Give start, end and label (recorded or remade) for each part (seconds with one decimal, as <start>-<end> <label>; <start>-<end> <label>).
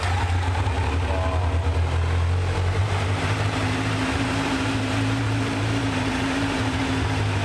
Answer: 0.0-2.8 recorded; 2.8-6.8 remade; 6.8-7.4 recorded